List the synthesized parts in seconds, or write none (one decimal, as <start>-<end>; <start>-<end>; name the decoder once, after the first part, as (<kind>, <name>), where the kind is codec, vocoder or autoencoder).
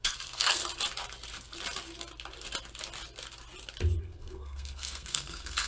0.0-0.6 (codec, SNAC); 4.0-5.7